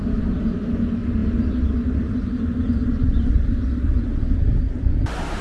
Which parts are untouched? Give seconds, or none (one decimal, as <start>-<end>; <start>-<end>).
0.0-5.4